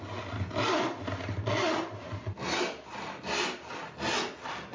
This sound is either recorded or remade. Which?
recorded